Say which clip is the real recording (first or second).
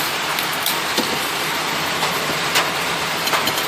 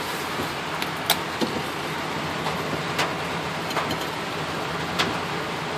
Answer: second